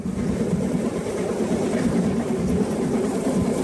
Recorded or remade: recorded